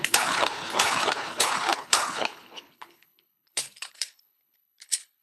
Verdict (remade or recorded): remade